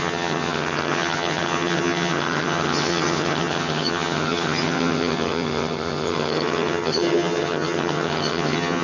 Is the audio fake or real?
fake